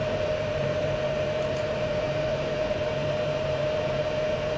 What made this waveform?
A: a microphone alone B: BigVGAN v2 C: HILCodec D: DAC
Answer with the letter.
B